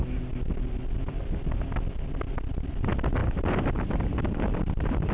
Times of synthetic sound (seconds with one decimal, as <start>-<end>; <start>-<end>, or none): 3.2-5.1